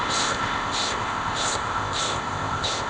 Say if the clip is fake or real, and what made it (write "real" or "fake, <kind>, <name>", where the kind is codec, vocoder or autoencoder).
fake, codec, ZipCodec